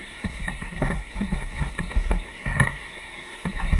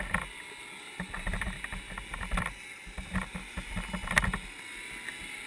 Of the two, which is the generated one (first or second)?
first